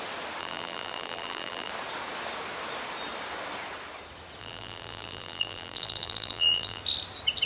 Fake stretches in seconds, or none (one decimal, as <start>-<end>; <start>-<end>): 0.4-1.7; 4.4-6.8